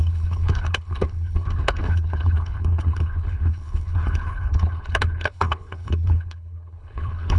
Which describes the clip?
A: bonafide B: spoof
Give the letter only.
B